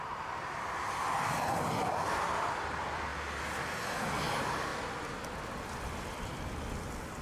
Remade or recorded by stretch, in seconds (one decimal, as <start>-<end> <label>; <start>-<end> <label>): 0.0-3.1 remade; 3.1-3.7 recorded; 3.7-4.7 remade; 4.7-5.7 recorded; 5.7-7.2 remade